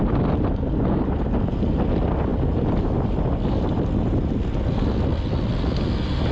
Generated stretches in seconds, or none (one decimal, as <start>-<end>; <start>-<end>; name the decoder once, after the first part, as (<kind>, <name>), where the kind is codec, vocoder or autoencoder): none